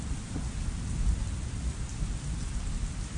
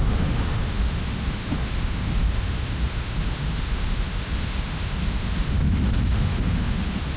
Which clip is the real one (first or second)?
first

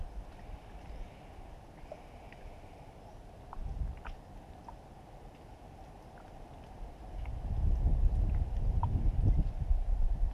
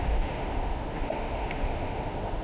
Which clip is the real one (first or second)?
first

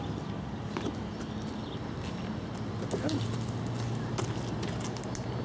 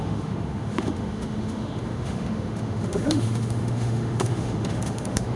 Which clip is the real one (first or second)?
first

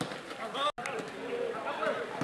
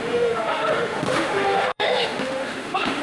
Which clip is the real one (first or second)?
first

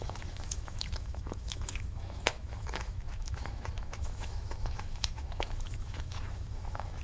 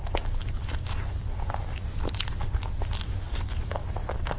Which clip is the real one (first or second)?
second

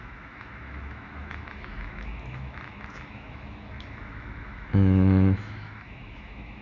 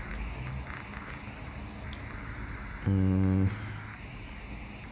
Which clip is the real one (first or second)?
second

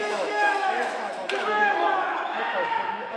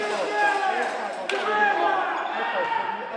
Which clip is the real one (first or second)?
second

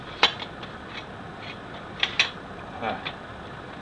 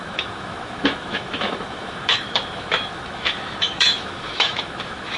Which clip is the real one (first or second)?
first